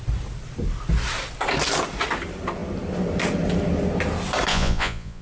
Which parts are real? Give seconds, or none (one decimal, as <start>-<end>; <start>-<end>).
0.0-4.5